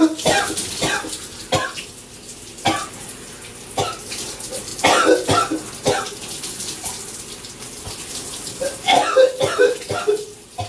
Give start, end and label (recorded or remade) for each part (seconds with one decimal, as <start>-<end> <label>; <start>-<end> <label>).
0.0-10.7 recorded